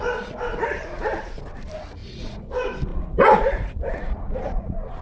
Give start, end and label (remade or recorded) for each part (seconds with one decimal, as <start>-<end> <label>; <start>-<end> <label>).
0.0-2.0 recorded; 2.0-2.5 remade; 2.5-2.9 recorded; 2.9-5.0 remade